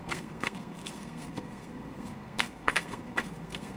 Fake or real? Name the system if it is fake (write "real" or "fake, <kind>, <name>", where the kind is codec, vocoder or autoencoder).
fake, codec, SNAC